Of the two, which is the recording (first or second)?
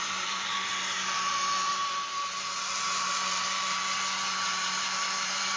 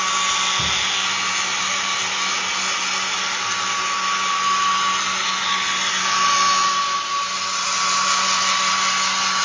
second